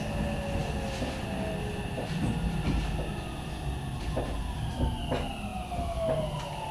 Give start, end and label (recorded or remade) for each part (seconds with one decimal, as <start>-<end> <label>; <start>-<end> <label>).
0.0-6.7 recorded